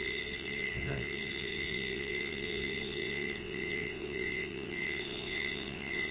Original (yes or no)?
no